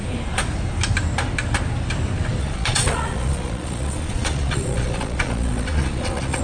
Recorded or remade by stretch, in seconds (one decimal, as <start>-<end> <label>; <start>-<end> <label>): 0.0-2.4 recorded; 2.4-6.4 remade